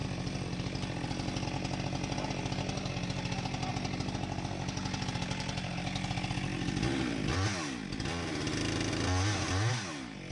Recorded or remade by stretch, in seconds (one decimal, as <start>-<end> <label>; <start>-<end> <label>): 0.0-10.3 recorded